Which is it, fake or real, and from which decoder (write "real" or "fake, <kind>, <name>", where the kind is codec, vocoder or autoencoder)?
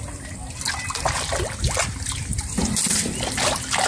real